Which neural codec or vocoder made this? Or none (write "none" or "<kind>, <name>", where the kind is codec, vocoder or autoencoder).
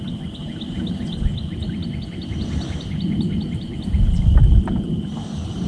none